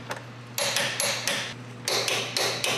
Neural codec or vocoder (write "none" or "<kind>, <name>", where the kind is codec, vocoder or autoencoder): none